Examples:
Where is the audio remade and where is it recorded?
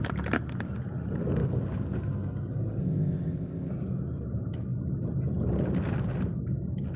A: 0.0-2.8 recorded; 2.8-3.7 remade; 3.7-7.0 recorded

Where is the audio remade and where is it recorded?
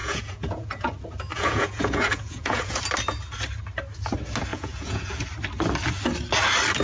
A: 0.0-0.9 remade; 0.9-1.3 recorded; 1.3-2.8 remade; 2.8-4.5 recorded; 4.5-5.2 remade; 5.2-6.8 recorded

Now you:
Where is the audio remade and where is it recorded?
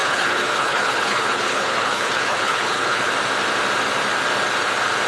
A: 0.0-3.1 remade; 3.1-5.1 recorded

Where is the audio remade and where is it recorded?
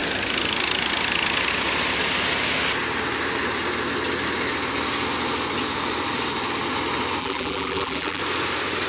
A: 0.0-7.2 recorded; 7.2-8.2 remade; 8.2-8.9 recorded